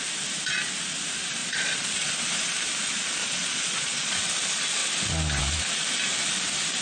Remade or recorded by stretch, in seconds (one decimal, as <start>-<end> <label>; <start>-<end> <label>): 0.0-1.4 recorded; 1.4-2.1 remade; 2.1-3.2 recorded; 3.2-4.3 remade; 4.3-6.8 recorded